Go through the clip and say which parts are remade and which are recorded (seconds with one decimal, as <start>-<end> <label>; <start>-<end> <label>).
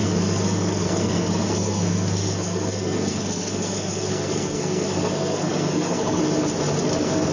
0.0-6.2 remade; 6.2-6.8 recorded; 6.8-7.3 remade